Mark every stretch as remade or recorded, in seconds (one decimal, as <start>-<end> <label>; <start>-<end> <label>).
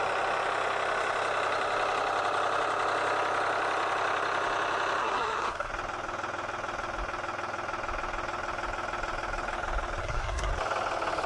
0.0-5.0 recorded; 5.0-5.7 remade; 5.7-10.0 recorded; 10.0-10.5 remade; 10.5-11.3 recorded